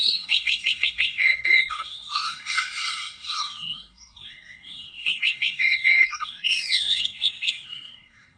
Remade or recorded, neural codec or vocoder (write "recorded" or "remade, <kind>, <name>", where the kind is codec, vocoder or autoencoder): remade, codec, SNAC